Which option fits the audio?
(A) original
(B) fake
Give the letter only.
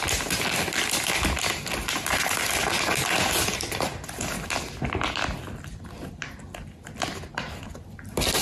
A